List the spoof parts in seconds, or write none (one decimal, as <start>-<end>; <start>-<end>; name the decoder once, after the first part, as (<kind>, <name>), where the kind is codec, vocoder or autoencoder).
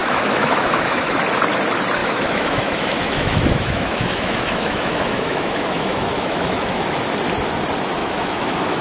0.0-1.2 (autoencoder, DAC-VAE); 2.0-7.0; 8.0-8.8